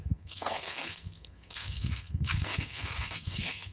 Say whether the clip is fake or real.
fake